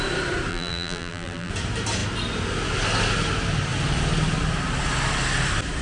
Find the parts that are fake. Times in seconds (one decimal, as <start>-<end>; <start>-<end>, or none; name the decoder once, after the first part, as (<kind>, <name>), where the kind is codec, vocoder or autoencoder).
0.5-1.5 (vocoder, BigVGAN v2)